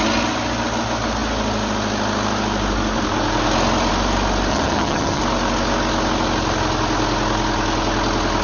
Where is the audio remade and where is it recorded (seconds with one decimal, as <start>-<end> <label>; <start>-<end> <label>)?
0.0-4.5 recorded; 4.5-5.2 remade; 5.2-8.4 recorded

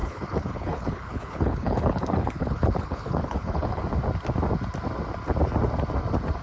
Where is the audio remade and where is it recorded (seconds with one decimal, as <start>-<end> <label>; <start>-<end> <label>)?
0.0-3.8 remade; 3.8-6.4 recorded